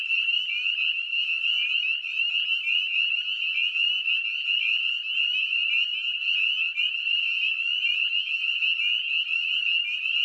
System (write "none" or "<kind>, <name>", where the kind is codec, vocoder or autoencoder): none